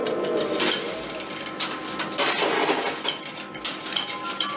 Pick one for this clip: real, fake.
real